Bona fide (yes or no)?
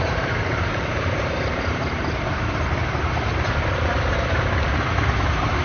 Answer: no